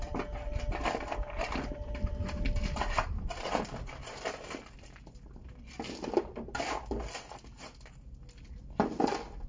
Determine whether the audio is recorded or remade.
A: recorded